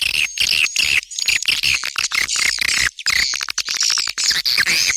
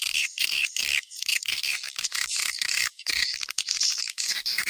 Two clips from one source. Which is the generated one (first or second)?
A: second